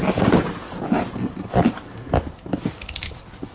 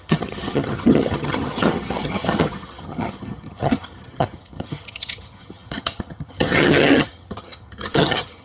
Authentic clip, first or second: first